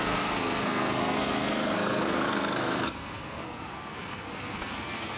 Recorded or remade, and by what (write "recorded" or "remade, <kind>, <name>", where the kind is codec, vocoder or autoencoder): remade, codec, SNAC